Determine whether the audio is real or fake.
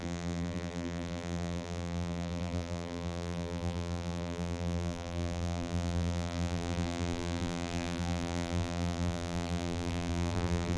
fake